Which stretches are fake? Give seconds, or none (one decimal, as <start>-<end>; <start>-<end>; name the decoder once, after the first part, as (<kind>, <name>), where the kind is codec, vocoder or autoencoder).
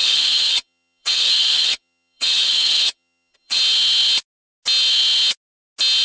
0.0-3.6 (vocoder, HiFi-GAN)